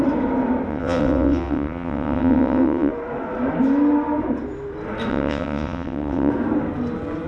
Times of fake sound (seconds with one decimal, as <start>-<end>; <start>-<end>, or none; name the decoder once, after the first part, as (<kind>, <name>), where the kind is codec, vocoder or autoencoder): 0.7-2.9 (vocoder, WaveNeXt); 5.1-6.3